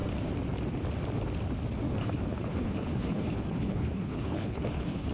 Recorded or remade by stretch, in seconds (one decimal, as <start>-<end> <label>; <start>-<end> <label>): 0.0-2.0 recorded; 2.0-5.1 remade